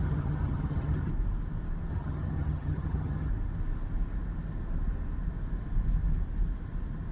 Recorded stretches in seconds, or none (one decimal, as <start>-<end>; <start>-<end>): 1.1-1.9; 3.3-7.1